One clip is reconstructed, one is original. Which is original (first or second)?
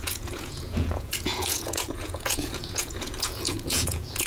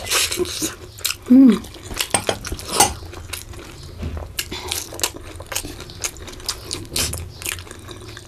second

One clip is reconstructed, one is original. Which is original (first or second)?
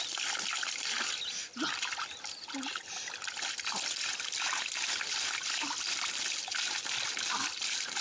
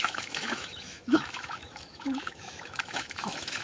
first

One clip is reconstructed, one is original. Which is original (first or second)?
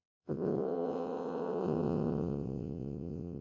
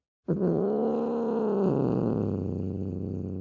second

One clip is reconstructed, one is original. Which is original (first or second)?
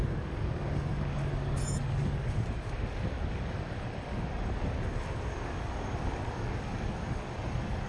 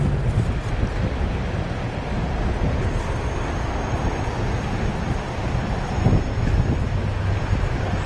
second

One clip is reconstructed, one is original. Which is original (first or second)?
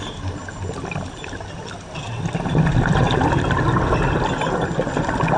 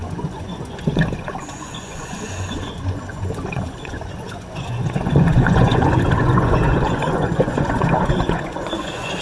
first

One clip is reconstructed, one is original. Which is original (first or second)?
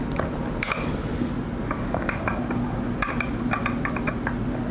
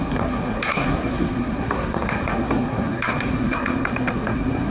first